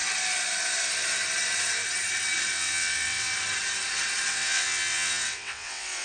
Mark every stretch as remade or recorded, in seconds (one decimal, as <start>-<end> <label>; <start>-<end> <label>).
0.0-2.5 recorded; 2.5-3.3 remade; 3.3-4.3 recorded; 4.3-6.0 remade

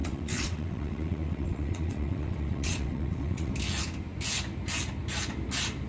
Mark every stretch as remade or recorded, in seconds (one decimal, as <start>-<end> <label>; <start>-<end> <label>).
0.0-3.5 remade; 3.5-5.9 recorded

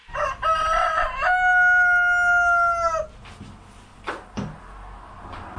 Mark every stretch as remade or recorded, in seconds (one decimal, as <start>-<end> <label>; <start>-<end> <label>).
0.0-5.6 recorded